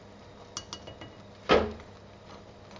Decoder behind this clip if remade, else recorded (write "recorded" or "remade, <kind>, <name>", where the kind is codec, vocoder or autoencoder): recorded